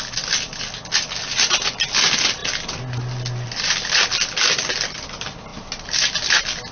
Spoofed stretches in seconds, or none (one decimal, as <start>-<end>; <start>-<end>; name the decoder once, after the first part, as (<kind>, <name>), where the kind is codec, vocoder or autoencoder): none